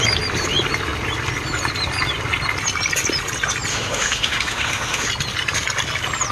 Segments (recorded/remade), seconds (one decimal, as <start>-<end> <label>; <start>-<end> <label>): 0.0-3.7 recorded; 3.7-5.1 remade; 5.1-6.3 recorded